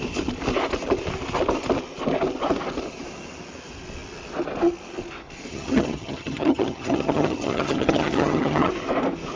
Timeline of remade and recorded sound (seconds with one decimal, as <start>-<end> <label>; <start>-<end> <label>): 0.0-5.5 recorded; 5.5-8.7 remade; 8.7-9.4 recorded